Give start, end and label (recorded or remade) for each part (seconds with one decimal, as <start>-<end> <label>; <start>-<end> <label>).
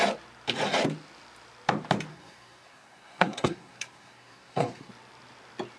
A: 0.0-2.1 recorded; 2.1-4.9 remade; 4.9-5.8 recorded